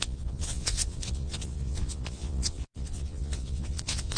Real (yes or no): no